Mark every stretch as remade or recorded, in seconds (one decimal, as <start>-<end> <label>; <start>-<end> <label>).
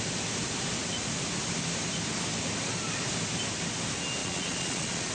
0.0-4.2 recorded; 4.2-5.1 remade